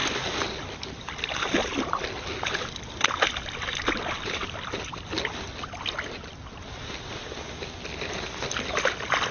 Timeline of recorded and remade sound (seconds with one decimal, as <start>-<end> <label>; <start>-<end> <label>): 0.0-9.3 recorded